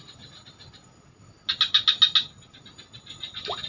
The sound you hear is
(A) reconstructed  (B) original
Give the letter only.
B